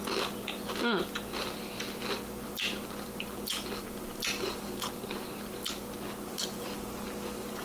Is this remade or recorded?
recorded